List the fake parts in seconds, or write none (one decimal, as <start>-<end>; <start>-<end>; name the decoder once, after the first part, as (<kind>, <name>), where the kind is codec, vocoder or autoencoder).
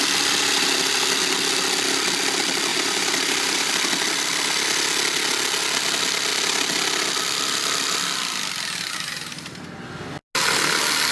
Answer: 2.7-3.7 (vocoder, BigVGAN v2)